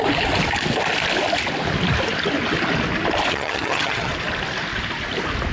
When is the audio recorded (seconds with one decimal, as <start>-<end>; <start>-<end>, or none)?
0.0-3.3; 4.1-5.5